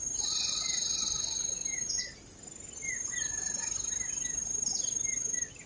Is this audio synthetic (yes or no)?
no